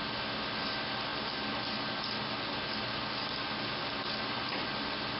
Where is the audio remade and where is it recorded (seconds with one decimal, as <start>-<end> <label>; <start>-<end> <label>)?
0.0-5.2 recorded

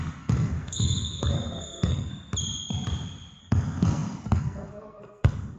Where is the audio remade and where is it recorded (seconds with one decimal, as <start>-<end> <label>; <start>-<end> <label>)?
0.0-2.1 remade; 2.1-3.4 recorded; 3.4-5.6 remade

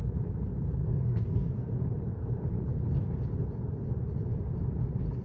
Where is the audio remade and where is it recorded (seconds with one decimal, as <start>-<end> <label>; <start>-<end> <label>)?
0.0-0.8 recorded; 0.8-1.7 remade; 1.7-5.2 recorded

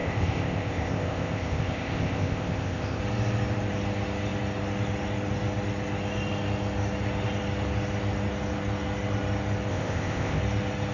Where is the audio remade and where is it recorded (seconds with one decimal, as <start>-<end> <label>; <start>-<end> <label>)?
0.0-3.0 remade; 3.0-9.7 recorded; 9.7-10.4 remade; 10.4-10.9 recorded